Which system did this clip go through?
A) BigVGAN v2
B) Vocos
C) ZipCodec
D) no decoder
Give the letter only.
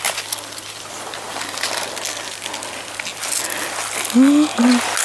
D